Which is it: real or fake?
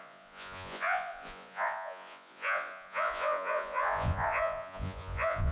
fake